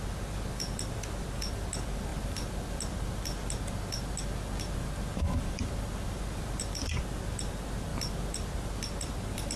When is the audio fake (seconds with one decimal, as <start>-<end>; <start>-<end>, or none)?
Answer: 2.1-7.0; 7.9-8.8